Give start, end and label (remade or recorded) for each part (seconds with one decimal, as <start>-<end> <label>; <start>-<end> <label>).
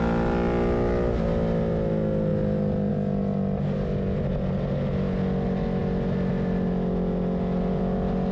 0.0-8.3 recorded